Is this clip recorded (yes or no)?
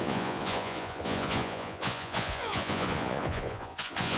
no